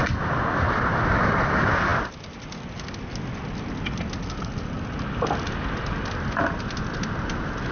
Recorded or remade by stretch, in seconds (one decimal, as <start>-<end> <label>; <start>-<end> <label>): 0.0-7.7 recorded